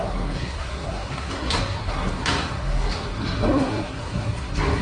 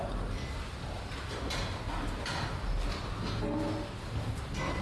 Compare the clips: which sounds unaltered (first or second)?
second